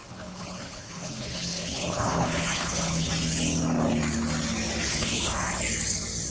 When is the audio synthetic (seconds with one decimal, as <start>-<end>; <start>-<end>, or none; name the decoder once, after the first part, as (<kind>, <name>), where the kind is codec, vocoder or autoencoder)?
0.0-3.1 (codec, HILCodec); 4.9-5.6